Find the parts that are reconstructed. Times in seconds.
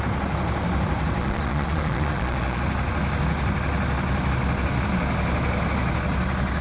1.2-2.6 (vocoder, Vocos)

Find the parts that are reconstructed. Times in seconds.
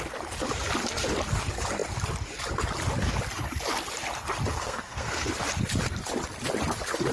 4.5-5.3 (codec, SNAC)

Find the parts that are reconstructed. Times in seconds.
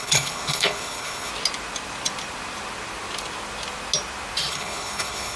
0.0-1.3 (codec, HILCodec); 4.5-5.4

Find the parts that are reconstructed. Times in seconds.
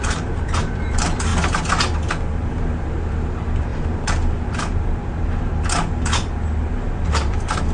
0.0-1.3 (vocoder, BigVGAN v2); 2.5-5.5; 6.7-7.7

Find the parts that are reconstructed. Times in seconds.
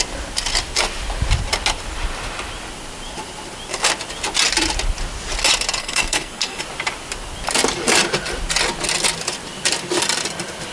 5.8-6.6 (codec, SNAC)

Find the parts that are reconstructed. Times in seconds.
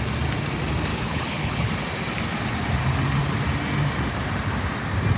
0.9-1.7 (codec, HILCodec)